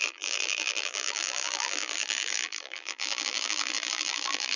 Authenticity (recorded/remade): remade